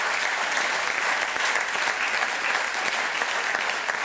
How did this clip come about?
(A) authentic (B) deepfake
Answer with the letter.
B